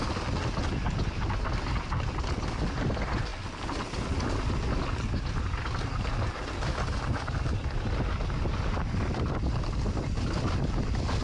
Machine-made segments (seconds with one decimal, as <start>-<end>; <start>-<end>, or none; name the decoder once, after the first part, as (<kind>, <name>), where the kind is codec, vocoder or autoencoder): none

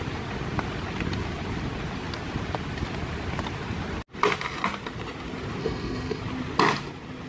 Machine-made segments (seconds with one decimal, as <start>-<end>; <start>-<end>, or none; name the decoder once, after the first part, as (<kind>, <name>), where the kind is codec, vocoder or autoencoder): 5.6-6.2 (codec, SNAC)

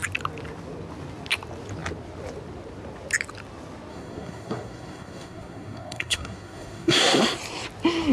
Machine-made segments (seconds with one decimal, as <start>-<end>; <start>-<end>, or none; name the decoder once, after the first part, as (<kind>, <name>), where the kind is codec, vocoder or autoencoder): 3.9-7.2 (codec, SNAC)

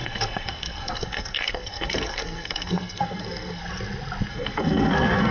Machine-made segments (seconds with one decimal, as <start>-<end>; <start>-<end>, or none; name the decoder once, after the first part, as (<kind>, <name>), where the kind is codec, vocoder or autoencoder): 0.0-3.6 (codec, SNAC); 4.3-5.3